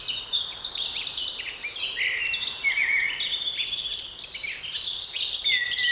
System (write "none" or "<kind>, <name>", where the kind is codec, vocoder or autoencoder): none